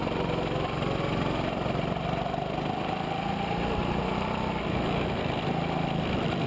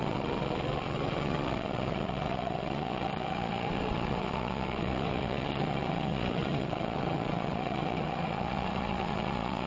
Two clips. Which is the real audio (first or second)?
first